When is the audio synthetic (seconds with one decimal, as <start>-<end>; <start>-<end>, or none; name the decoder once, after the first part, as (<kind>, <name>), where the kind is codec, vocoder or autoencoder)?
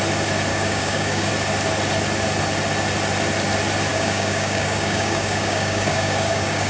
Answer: 0.5-1.3 (codec, DAC); 3.9-6.7